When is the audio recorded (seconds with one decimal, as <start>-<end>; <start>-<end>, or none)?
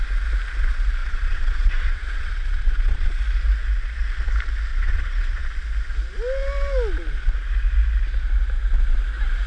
0.0-1.0; 3.2-4.7; 5.4-9.5